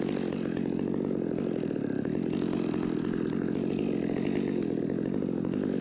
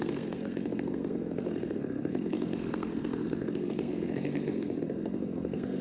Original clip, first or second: first